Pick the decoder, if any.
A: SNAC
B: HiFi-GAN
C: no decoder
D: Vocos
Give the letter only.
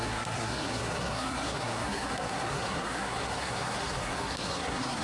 A